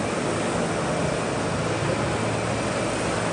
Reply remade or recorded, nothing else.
recorded